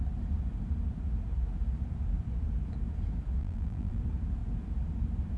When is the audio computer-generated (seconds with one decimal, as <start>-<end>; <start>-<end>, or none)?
3.4-4.0